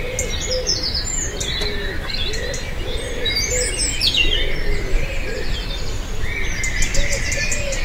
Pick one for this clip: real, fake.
real